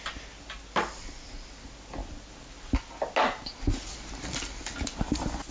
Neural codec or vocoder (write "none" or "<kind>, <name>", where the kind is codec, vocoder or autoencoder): none